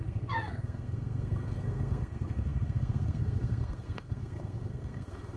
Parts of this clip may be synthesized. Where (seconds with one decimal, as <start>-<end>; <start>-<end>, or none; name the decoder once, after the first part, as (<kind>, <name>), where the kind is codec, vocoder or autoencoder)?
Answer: 0.0-5.4 (codec, SNAC)

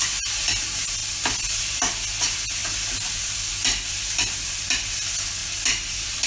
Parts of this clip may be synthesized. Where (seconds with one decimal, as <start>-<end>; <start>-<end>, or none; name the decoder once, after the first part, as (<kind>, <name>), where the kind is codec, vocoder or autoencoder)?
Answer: none

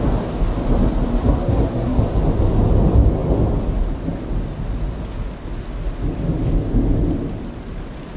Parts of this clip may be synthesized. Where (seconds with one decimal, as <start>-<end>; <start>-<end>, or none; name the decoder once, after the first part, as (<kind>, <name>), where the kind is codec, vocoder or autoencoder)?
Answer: 1.2-2.0 (codec, SNAC)

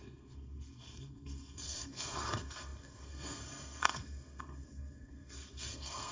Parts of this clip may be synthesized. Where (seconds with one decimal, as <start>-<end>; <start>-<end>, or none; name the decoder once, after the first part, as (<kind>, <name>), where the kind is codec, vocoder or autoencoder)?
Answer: 0.0-6.1 (codec, SNAC)